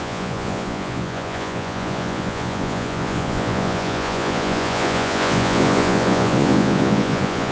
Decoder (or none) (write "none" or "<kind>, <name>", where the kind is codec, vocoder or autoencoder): vocoder, Vocos